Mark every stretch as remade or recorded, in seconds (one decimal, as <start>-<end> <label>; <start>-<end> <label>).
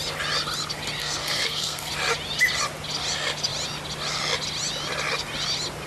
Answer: 0.0-1.0 recorded; 1.0-1.9 remade; 1.9-5.9 recorded